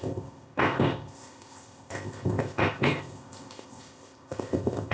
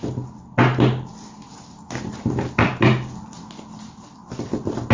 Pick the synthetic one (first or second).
first